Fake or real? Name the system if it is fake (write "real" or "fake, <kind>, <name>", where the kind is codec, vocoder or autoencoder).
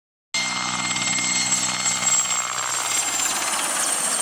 real